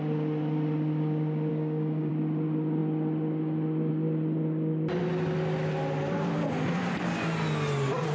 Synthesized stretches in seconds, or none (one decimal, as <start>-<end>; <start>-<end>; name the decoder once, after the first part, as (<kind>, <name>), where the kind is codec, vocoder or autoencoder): 1.5-2.1 (codec, DAC)